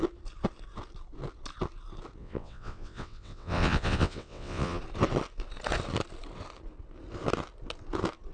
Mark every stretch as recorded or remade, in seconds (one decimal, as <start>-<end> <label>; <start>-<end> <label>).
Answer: 0.0-2.2 recorded; 2.2-4.8 remade; 4.8-8.3 recorded